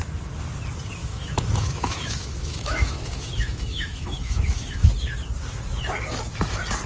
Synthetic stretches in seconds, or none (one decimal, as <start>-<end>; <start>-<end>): 1.0-4.9

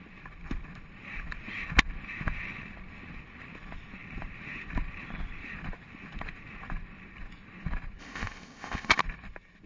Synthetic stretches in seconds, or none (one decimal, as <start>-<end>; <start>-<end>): 8.0-9.0

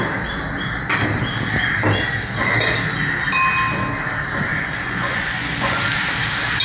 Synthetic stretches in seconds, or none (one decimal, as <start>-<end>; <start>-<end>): 4.5-5.8

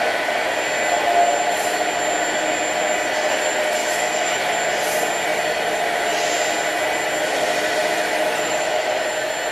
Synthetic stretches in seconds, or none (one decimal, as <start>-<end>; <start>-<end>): 3.8-4.5; 7.8-8.9

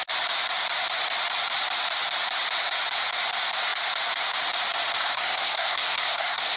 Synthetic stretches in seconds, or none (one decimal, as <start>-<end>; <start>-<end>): 5.0-6.6